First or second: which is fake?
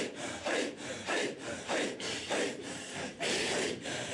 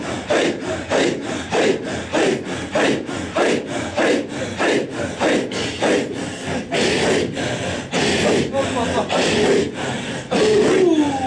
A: first